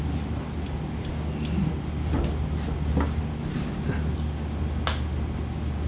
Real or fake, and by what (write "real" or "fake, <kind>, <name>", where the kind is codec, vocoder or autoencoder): real